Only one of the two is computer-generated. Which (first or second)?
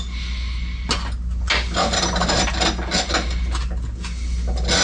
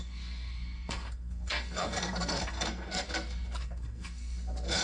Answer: second